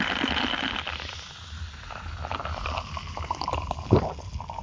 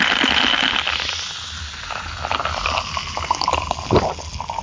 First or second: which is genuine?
second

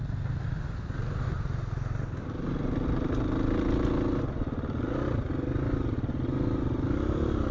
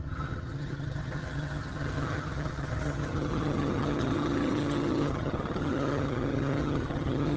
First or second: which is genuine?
first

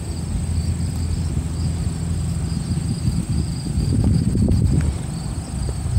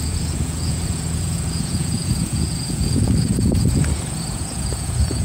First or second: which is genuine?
first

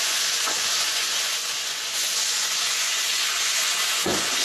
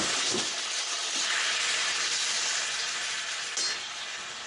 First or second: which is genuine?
second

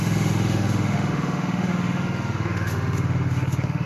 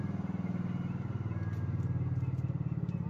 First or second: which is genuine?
second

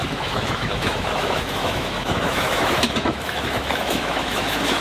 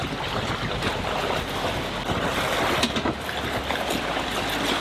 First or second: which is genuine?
second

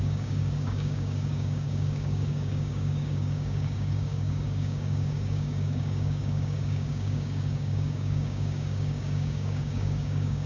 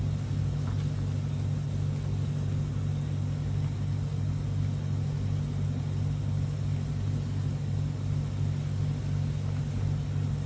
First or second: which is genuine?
second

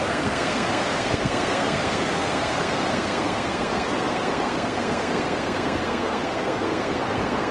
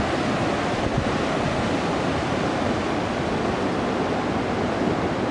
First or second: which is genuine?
second